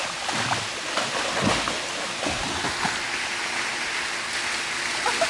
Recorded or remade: recorded